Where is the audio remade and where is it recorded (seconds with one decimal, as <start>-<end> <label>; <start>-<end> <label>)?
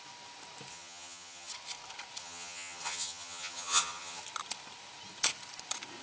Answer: 0.0-0.7 recorded; 0.7-1.5 remade; 1.5-2.2 recorded; 2.2-4.2 remade; 4.2-6.0 recorded